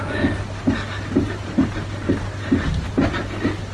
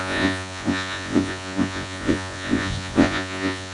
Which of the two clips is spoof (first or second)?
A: second